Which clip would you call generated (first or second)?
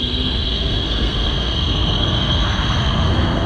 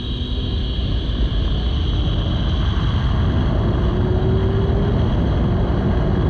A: first